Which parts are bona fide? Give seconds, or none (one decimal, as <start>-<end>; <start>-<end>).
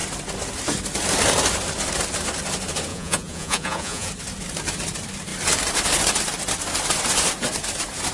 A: 0.0-2.9; 4.1-8.1